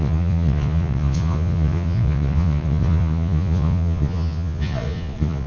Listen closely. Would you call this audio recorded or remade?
remade